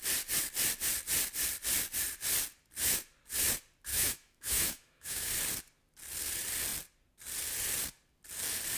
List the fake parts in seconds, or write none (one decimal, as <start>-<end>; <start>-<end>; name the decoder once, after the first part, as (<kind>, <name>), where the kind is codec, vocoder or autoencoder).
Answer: 3.9-5.3 (autoencoder, DAC-VAE)

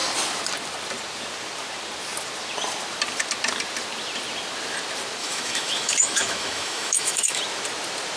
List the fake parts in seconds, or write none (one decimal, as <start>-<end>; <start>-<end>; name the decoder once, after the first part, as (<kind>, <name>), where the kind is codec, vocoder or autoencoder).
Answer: 5.2-7.4 (autoencoder, DAC-VAE)

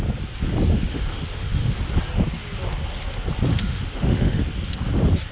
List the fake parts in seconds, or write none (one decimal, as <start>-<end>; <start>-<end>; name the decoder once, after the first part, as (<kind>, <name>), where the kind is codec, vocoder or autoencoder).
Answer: 0.7-1.8 (autoencoder, DAC-VAE); 3.5-4.4

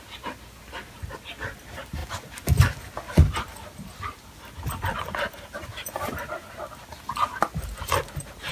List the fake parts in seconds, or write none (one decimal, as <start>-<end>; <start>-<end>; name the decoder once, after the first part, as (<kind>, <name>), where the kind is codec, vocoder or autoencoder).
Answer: none

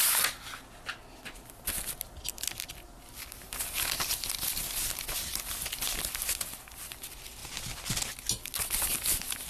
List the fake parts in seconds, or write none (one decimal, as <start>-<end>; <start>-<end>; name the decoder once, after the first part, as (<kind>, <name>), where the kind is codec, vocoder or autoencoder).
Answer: none

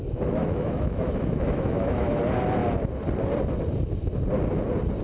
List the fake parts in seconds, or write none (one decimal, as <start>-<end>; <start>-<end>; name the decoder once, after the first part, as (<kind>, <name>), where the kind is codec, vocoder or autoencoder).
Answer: 0.4-2.2 (autoencoder, DAC-VAE)

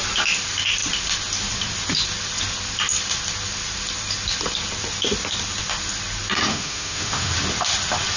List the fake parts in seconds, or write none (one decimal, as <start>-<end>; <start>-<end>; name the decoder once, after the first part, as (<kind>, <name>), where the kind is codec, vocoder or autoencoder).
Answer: 6.5-7.3 (autoencoder, DAC-VAE)

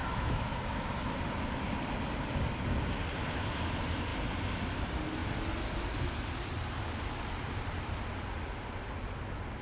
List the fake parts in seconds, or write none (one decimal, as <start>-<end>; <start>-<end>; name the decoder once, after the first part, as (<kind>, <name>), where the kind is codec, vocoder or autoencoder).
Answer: 0.0-0.7 (autoencoder, DAC-VAE)